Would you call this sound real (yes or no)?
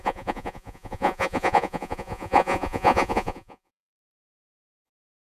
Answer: no